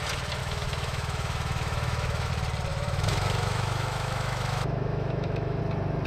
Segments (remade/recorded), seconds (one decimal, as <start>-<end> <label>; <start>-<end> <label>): 0.0-0.4 recorded; 0.4-2.3 remade; 2.3-2.7 recorded; 2.7-5.6 remade; 5.6-6.1 recorded